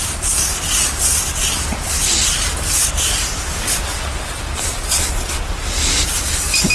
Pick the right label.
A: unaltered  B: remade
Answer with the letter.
A